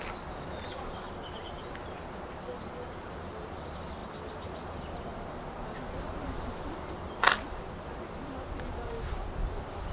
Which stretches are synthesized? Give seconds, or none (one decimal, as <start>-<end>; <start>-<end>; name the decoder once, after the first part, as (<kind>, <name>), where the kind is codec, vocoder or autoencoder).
none